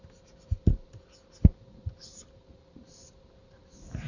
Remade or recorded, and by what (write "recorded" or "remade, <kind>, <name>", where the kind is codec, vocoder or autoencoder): recorded